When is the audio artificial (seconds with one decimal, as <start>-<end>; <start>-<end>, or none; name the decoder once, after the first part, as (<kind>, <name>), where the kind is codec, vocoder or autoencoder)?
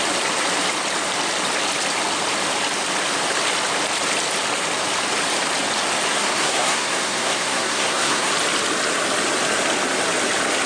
6.1-8.3 (codec, SNAC)